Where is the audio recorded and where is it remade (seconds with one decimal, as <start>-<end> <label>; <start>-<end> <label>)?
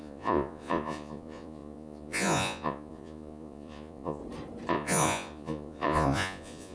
0.0-4.2 remade; 4.2-4.7 recorded; 4.7-6.7 remade